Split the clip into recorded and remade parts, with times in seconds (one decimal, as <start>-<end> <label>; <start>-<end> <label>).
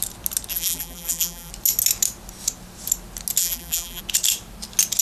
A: 0.0-0.5 recorded; 0.5-1.5 remade; 1.5-3.4 recorded; 3.4-4.0 remade; 4.0-5.0 recorded